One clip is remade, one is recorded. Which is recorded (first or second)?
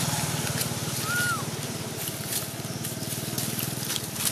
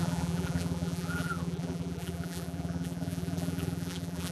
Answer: first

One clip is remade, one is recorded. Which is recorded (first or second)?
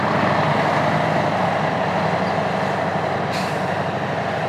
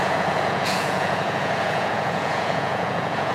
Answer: first